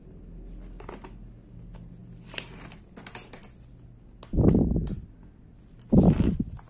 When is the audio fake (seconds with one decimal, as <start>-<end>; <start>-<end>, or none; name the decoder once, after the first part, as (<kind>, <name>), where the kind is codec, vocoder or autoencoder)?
none